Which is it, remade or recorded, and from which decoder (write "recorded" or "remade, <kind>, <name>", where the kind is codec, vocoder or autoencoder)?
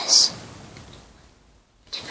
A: recorded